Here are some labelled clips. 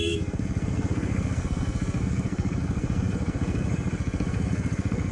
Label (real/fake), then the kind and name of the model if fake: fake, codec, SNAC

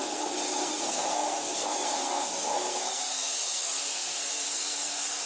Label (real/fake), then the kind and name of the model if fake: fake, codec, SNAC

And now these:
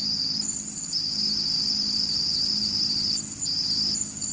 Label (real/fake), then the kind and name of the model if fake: real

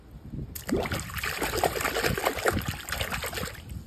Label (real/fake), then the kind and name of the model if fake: real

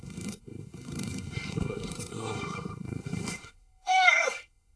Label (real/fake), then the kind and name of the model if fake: fake, codec, SNAC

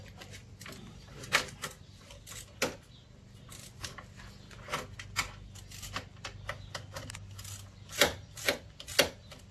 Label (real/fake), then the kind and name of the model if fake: real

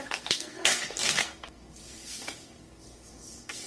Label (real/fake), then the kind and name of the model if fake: fake, codec, SNAC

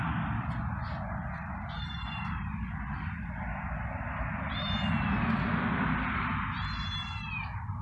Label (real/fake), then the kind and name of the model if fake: real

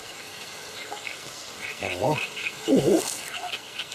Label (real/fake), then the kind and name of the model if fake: fake, codec, SNAC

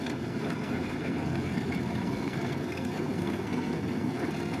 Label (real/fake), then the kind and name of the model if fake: fake, codec, SNAC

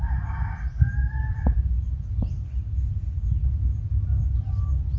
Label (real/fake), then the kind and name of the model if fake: real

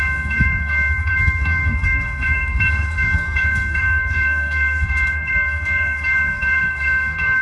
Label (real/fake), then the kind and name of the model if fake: fake, codec, SNAC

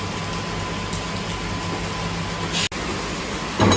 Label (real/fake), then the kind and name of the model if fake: real